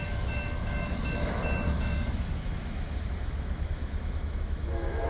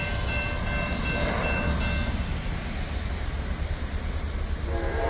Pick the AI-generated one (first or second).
first